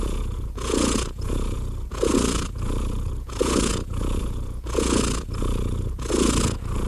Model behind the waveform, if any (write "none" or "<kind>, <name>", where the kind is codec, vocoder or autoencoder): vocoder, Vocos